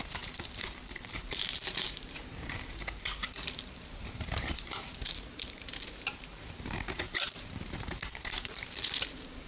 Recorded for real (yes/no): no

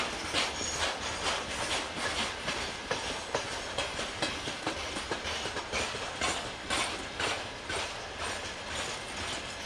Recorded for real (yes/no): yes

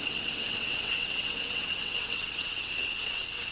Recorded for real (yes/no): no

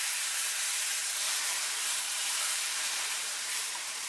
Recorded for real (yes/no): no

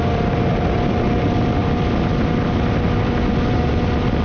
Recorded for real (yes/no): yes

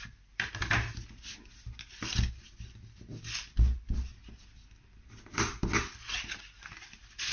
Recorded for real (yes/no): yes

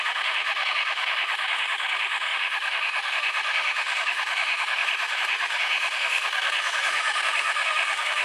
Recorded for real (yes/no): no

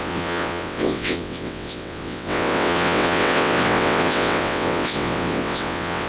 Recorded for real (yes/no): no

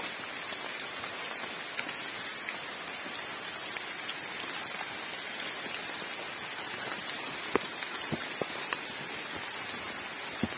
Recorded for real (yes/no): yes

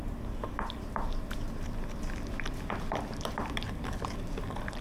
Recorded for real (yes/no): yes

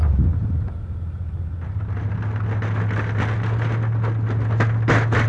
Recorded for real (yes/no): yes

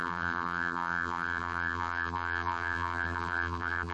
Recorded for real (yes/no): no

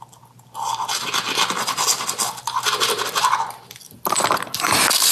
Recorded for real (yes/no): yes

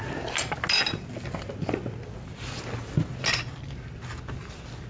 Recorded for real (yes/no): yes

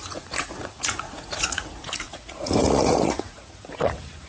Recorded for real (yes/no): no